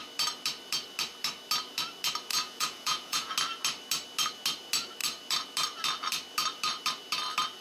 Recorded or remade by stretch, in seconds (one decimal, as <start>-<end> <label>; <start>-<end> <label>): 0.0-2.3 recorded; 2.3-3.3 remade; 3.3-7.6 recorded